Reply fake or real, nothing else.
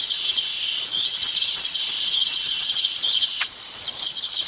fake